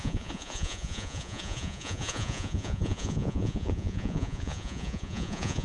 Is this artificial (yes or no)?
yes